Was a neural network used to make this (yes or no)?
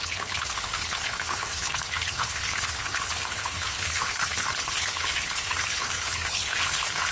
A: yes